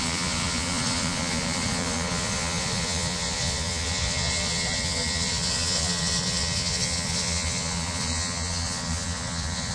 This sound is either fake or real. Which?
fake